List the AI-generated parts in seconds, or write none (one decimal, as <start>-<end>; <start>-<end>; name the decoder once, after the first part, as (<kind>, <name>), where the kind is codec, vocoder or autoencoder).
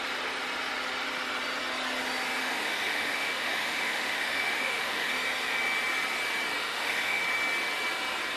2.4-5.1 (autoencoder, DAC-VAE); 6.6-7.2